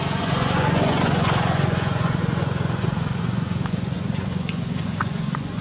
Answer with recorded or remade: remade